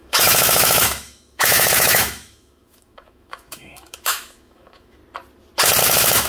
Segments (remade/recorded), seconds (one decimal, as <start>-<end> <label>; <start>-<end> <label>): 0.0-5.0 remade; 5.0-5.8 recorded; 5.8-6.3 remade